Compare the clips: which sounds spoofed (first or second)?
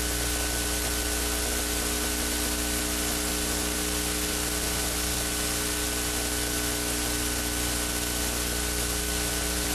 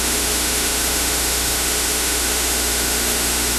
second